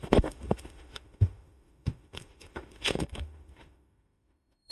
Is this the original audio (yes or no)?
no